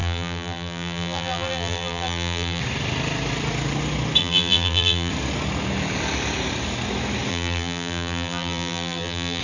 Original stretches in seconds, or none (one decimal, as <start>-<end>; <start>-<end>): 2.6-4.2; 5.1-7.3